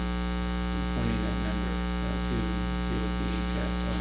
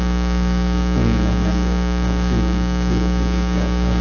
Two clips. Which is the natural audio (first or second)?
first